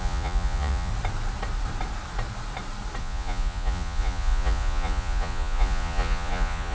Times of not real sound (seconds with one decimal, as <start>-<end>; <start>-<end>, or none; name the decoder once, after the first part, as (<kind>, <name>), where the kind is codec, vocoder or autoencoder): 0.0-0.9 (vocoder, Vocos); 3.0-6.7